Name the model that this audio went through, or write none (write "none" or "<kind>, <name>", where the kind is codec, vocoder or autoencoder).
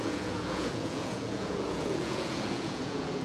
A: vocoder, Vocos